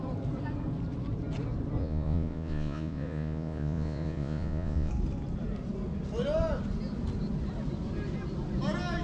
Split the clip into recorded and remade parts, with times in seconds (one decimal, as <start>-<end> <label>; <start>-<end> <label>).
0.0-1.8 recorded; 1.8-4.9 remade; 4.9-9.0 recorded

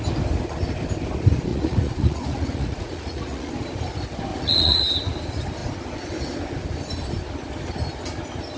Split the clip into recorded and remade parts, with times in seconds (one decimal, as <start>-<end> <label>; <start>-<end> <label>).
0.0-1.5 recorded; 1.5-3.5 remade; 3.5-4.3 recorded; 4.3-4.8 remade; 4.8-8.6 recorded

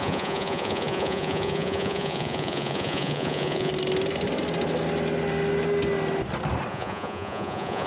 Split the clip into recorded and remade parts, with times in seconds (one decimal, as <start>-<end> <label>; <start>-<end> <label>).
0.0-3.7 remade; 3.7-6.7 recorded; 6.7-7.9 remade

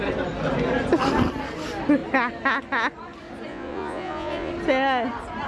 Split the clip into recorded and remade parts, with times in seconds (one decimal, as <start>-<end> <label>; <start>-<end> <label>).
0.0-3.5 recorded; 3.5-4.5 remade; 4.5-5.5 recorded

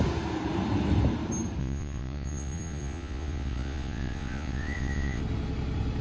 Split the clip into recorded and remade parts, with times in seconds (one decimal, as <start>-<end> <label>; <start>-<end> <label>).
0.0-1.6 recorded; 1.6-5.2 remade; 5.2-6.0 recorded

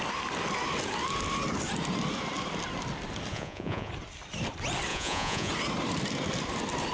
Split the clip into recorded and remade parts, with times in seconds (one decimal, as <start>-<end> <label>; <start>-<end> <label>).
0.0-3.3 recorded; 3.3-3.9 remade; 3.9-4.9 recorded; 4.9-5.5 remade; 5.5-6.9 recorded

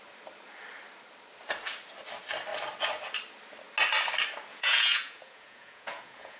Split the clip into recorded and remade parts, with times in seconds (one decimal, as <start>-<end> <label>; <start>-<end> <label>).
0.0-4.5 recorded; 4.5-6.4 remade

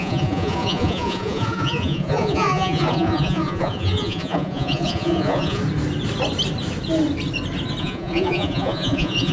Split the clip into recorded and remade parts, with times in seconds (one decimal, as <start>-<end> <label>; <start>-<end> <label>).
0.0-5.6 remade; 5.6-7.8 recorded; 7.8-9.3 remade